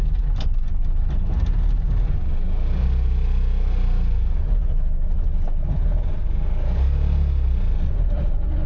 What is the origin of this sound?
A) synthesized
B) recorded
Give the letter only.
B